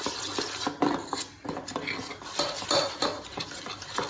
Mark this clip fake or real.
real